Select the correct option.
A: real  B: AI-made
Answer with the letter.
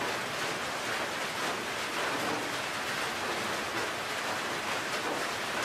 A